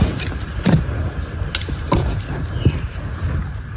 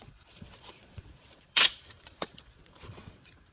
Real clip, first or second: first